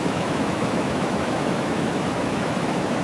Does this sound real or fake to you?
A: fake